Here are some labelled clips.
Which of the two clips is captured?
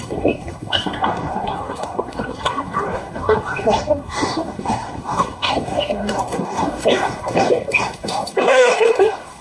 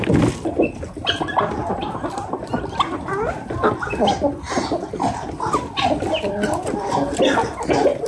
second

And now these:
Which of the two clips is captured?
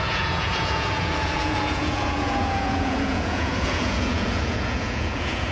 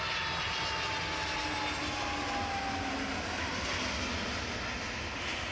second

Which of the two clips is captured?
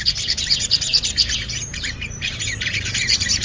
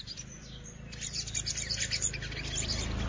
second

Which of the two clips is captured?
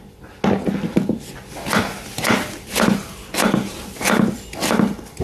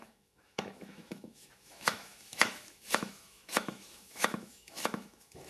first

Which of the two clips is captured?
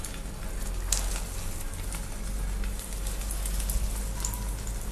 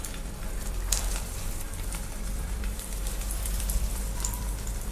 first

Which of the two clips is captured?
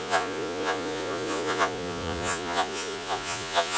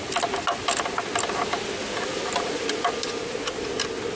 second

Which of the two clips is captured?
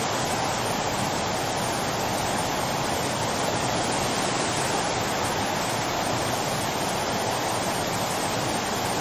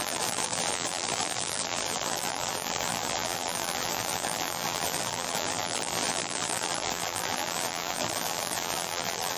first